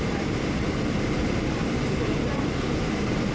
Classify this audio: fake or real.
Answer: fake